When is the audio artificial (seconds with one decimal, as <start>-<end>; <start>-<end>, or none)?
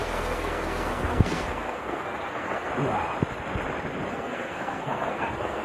0.0-2.7; 4.1-5.6